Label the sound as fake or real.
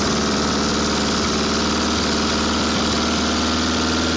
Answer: real